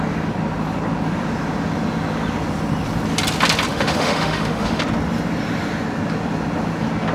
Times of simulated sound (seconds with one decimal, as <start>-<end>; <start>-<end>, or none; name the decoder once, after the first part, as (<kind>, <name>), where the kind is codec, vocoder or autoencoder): 3.7-4.8 (autoencoder, DAC-VAE)